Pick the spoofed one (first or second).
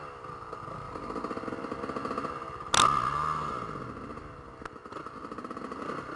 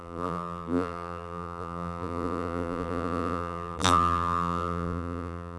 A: second